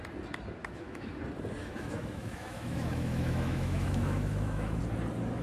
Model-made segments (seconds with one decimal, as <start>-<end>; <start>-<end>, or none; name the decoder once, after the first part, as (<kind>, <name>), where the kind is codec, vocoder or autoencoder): 0.6-1.2 (autoencoder, DAC-VAE); 1.6-4.8